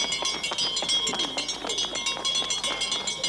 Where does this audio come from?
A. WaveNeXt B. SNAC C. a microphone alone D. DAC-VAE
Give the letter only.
C